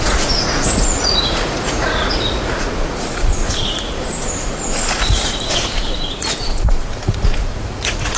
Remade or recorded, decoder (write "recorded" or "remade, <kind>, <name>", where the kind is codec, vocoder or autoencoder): remade, vocoder, Vocos